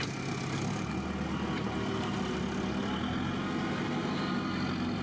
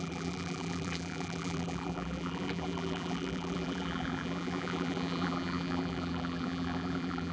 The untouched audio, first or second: first